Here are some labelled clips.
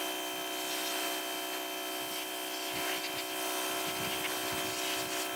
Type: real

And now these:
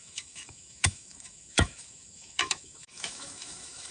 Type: fake